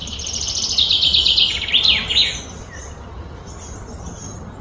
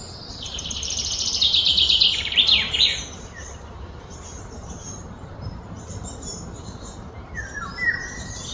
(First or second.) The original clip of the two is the first